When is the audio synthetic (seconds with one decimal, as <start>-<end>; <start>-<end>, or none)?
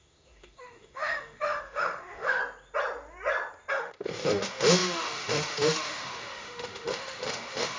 0.0-2.4; 3.7-7.8